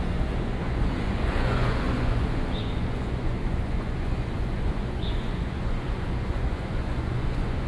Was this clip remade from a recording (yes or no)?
yes